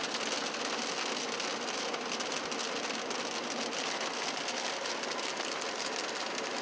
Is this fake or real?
real